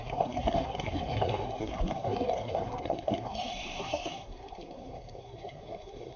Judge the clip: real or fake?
fake